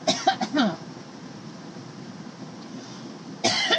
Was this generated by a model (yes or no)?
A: no